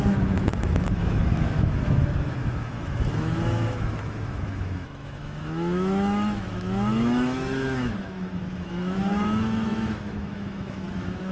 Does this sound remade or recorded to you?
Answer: remade